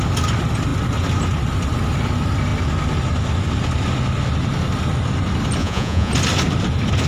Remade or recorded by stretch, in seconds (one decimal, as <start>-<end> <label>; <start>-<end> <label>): 0.0-5.6 recorded; 5.6-6.1 remade; 6.1-7.1 recorded